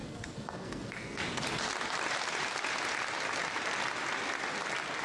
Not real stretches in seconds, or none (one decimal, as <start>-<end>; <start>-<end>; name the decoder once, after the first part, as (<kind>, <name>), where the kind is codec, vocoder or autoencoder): 0.0-1.2 (codec, SNAC)